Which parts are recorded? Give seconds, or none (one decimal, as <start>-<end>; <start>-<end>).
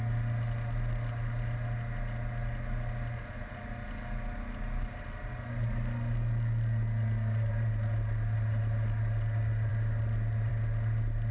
0.0-11.3